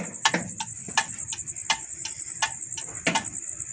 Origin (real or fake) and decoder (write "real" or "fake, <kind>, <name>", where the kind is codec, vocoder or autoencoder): real